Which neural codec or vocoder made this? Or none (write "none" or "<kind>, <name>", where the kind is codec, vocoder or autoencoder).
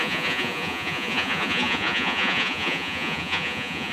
vocoder, Vocos